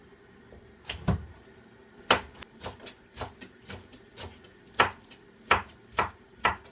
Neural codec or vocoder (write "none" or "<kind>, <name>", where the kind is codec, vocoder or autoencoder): none